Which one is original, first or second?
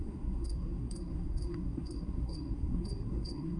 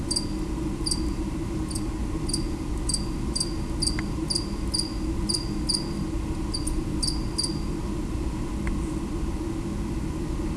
second